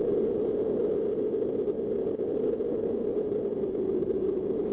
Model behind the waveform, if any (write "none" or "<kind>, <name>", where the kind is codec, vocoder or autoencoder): none